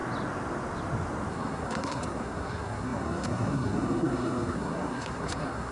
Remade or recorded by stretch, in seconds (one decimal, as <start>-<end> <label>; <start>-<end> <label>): 0.0-1.3 recorded; 1.3-5.7 remade